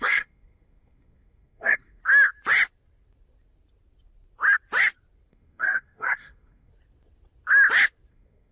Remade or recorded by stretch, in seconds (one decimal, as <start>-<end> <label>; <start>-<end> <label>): 0.0-2.0 remade; 2.0-5.3 recorded; 5.3-6.7 remade; 6.7-8.1 recorded; 8.1-8.5 remade

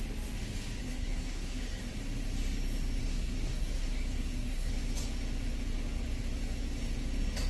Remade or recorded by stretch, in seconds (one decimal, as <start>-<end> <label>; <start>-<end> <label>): 0.0-0.8 recorded; 0.8-1.9 remade; 1.9-3.0 recorded; 3.0-4.7 remade; 4.7-7.5 recorded

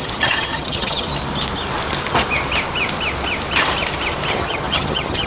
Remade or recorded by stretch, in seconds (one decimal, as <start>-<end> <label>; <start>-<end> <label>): 0.0-1.1 remade; 1.1-4.3 recorded; 4.3-5.3 remade

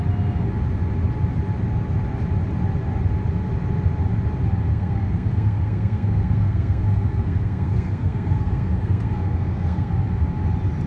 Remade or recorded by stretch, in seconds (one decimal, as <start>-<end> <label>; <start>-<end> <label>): 0.0-4.7 recorded; 4.7-9.9 remade; 9.9-10.9 recorded